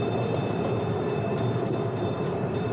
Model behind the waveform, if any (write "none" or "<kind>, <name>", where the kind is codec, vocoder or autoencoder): vocoder, BigVGAN v2